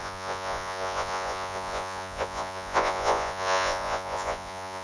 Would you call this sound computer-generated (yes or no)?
yes